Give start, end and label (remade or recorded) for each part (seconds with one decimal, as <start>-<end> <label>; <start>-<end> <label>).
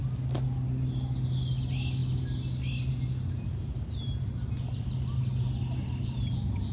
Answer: 0.0-6.7 recorded